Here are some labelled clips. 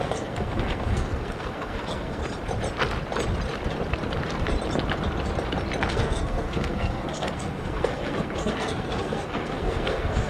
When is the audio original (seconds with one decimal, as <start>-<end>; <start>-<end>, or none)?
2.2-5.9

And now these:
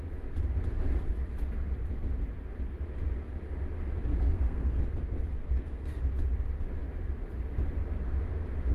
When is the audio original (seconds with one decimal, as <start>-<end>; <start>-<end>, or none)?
0.0-4.1; 4.8-5.4; 6.0-8.7

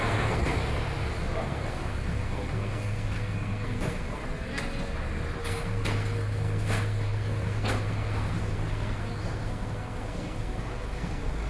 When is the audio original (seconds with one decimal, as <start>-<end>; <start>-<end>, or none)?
0.6-1.4; 4.2-5.4